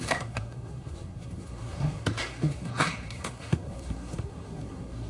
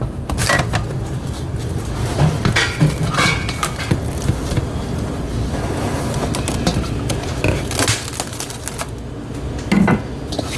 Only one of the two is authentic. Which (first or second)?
second